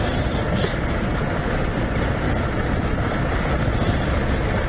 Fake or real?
real